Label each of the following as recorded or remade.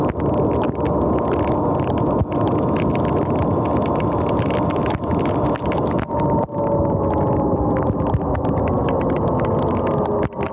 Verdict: recorded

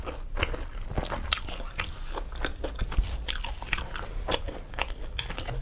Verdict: recorded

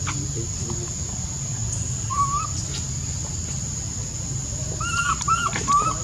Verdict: recorded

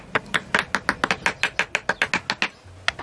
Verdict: recorded